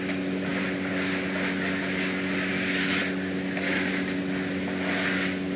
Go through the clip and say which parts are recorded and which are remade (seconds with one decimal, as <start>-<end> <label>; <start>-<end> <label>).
0.0-5.6 recorded